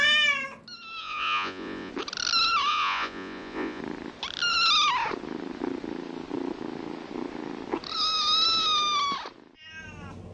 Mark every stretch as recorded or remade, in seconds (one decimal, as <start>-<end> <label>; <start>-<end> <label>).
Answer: 0.0-1.0 recorded; 1.0-1.9 remade; 1.9-2.7 recorded; 2.7-3.8 remade; 3.8-10.3 recorded